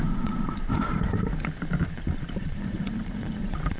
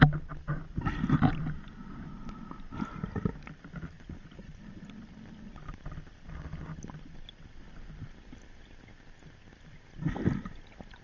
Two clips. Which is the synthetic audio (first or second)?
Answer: first